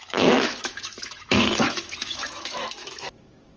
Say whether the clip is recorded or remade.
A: remade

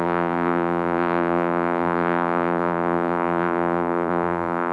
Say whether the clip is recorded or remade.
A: remade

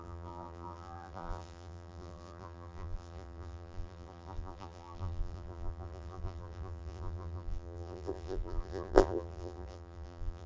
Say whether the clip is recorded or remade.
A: remade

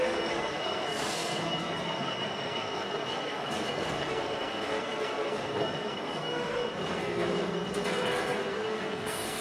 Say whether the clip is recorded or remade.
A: remade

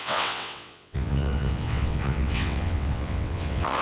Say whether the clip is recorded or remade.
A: remade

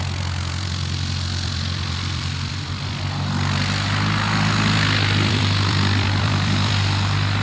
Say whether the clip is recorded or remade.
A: remade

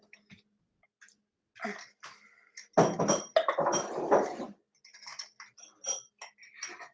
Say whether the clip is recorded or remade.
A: recorded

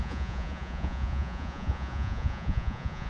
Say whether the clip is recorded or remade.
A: remade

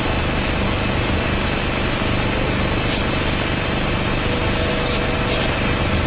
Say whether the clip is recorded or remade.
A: recorded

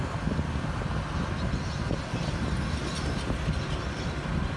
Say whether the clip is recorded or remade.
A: recorded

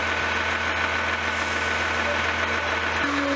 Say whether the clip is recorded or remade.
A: recorded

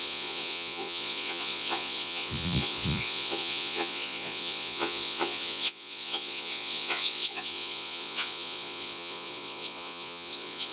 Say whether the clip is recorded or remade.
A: remade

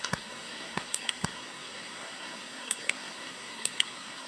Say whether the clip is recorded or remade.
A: remade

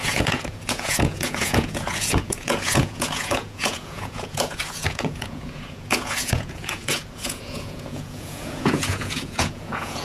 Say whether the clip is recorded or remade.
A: remade